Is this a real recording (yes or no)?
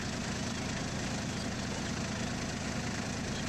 yes